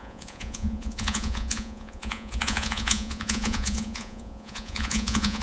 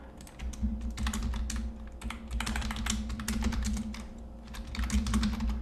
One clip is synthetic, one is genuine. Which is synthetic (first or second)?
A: first